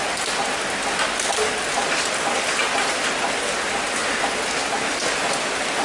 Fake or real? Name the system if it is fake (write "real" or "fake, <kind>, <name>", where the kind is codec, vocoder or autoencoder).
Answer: real